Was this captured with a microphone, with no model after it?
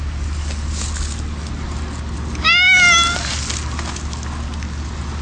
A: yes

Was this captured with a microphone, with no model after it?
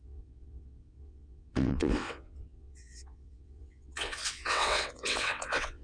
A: no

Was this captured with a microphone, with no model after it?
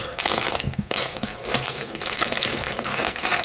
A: no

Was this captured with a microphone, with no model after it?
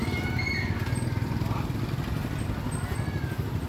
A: yes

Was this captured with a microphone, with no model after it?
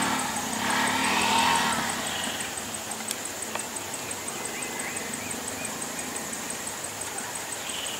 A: yes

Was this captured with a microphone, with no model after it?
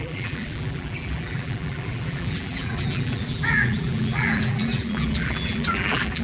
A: no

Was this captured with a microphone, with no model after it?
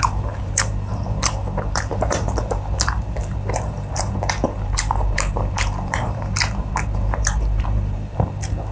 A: no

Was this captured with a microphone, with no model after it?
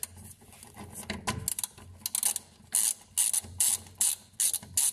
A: yes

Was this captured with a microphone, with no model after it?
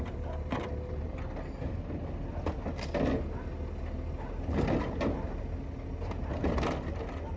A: yes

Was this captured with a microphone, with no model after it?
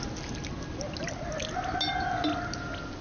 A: yes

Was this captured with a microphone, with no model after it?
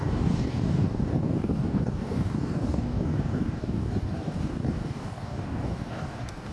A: no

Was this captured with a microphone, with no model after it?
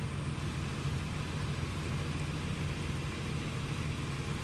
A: yes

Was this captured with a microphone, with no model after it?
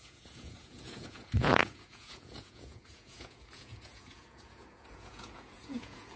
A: no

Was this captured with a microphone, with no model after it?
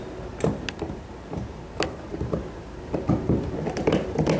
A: yes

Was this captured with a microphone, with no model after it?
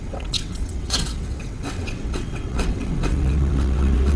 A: no